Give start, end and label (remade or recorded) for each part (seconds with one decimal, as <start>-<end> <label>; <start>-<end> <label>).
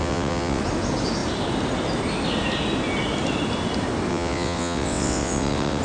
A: 0.0-0.6 remade; 0.6-4.1 recorded; 4.1-5.8 remade